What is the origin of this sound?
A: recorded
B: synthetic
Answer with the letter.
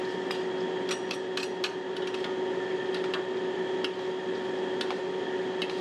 A